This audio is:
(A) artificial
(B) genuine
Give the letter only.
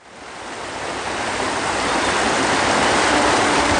B